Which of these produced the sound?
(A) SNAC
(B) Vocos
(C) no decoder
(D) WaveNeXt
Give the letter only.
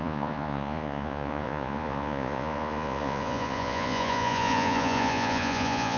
B